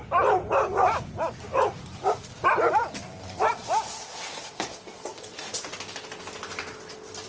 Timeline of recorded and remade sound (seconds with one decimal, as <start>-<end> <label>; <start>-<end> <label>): 0.0-7.3 recorded